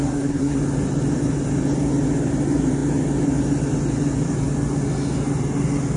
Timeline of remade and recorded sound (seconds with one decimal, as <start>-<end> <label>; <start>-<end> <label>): 0.0-0.6 remade; 0.6-6.0 recorded